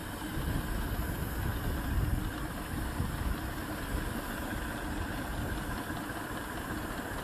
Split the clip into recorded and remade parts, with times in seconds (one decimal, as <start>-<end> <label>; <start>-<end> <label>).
0.0-7.2 recorded